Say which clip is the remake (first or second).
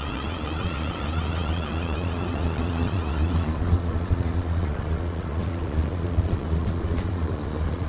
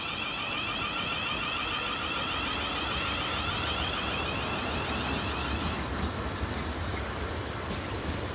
first